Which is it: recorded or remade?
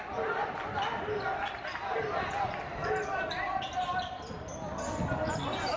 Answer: recorded